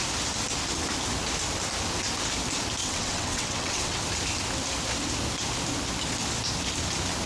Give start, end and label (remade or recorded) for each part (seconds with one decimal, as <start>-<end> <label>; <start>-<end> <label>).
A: 0.0-2.8 recorded; 2.8-4.0 remade; 4.0-7.3 recorded